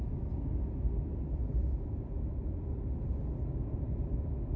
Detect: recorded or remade recorded